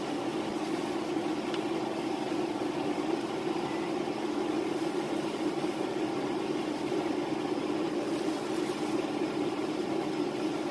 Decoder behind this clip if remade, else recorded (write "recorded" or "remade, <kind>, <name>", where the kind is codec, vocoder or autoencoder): remade, vocoder, BigVGAN v2